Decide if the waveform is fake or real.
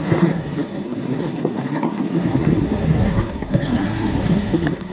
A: fake